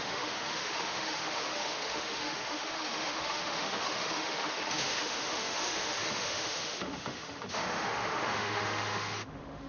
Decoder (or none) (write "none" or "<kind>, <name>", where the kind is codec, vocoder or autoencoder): autoencoder, DAC-VAE